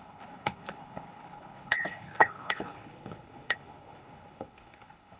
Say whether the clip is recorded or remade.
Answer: remade